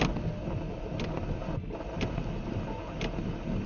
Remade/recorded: recorded